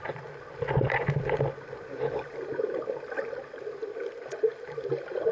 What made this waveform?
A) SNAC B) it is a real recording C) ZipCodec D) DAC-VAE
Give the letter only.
B